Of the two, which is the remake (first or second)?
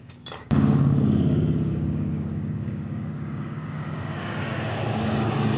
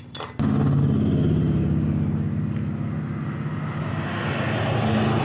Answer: first